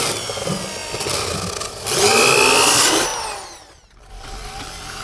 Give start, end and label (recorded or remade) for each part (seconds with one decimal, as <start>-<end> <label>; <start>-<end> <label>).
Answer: 0.0-5.0 recorded